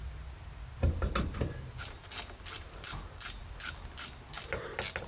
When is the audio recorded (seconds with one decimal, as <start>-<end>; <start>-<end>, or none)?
0.0-5.1